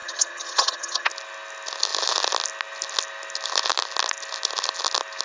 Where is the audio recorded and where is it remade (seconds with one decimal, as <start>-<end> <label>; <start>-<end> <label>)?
0.0-1.1 remade; 1.1-5.2 recorded